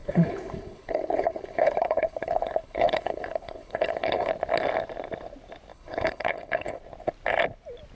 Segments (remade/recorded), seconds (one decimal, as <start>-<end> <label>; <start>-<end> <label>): 0.0-4.3 remade; 4.3-5.7 recorded; 5.7-6.8 remade; 6.8-7.9 recorded